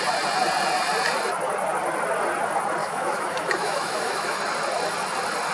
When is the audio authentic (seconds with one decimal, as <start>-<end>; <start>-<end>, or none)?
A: 0.0-2.8; 4.4-5.5